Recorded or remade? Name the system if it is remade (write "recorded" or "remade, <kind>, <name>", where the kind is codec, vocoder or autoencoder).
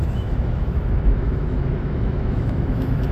remade, autoencoder, DAC-VAE